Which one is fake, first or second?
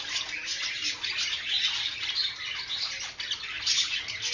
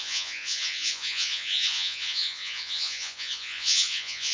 second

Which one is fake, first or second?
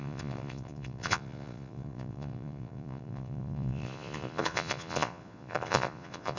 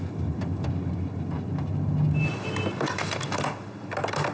first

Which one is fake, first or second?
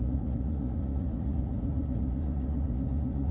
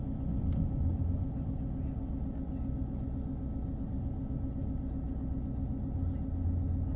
first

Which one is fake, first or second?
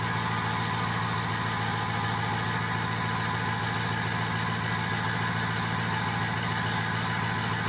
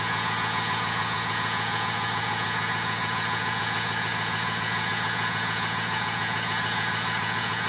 second